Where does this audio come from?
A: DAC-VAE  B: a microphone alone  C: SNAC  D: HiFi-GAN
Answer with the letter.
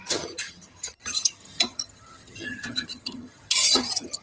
D